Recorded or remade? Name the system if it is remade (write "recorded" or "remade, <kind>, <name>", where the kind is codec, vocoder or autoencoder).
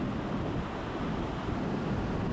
recorded